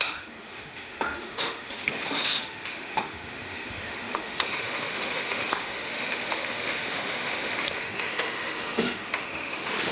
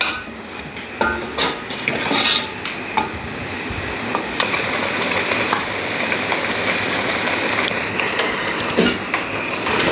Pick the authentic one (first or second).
second